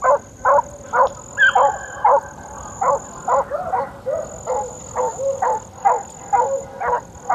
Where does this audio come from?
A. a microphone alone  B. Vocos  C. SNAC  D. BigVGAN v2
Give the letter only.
A